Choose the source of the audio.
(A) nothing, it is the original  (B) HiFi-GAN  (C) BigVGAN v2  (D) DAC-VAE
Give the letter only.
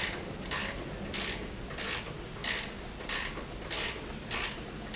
A